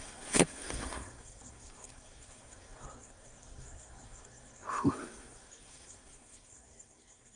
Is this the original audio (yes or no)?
no